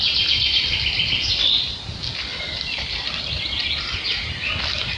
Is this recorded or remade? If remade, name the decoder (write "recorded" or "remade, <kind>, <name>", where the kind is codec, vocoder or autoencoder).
recorded